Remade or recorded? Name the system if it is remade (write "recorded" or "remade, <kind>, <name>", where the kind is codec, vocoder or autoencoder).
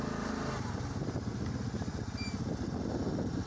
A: recorded